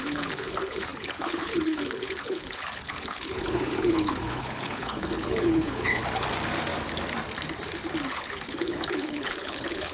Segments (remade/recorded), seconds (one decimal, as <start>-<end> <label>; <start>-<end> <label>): 0.0-6.0 remade; 6.0-8.1 recorded; 8.1-9.9 remade